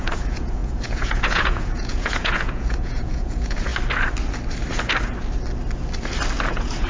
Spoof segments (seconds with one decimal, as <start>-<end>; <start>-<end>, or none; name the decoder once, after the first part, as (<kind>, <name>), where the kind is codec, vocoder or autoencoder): 0.0-3.7 (vocoder, Vocos); 6.5-6.9